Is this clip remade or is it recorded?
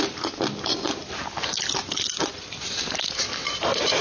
recorded